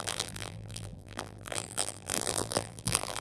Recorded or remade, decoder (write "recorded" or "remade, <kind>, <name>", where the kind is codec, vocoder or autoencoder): remade, vocoder, BigVGAN v2